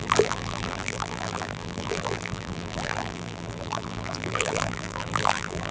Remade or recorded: remade